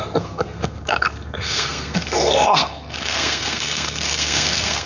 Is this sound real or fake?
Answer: fake